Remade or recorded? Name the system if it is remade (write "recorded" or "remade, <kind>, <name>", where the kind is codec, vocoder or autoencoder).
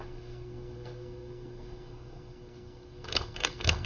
remade, codec, SNAC